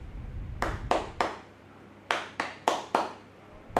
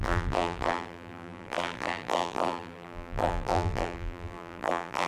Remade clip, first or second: second